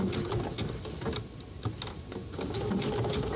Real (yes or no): yes